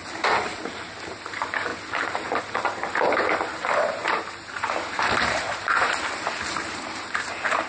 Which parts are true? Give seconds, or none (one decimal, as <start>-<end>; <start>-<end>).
none